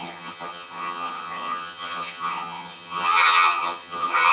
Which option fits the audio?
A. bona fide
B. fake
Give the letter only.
B